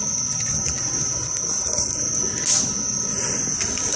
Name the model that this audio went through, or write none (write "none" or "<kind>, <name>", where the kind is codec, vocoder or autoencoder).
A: none